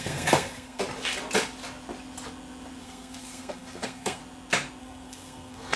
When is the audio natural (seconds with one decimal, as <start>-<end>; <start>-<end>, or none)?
0.8-2.8; 4.2-4.8